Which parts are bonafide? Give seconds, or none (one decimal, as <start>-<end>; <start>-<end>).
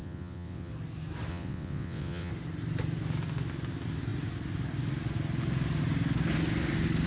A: 0.7-1.3; 2.3-7.1